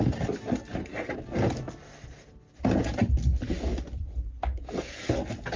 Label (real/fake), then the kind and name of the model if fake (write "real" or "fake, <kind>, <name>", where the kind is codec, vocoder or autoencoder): real